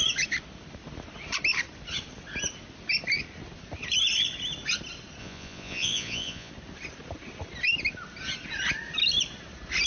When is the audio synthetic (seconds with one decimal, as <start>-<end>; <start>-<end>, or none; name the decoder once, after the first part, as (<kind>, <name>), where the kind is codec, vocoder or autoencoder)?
5.2-6.5 (vocoder, Vocos)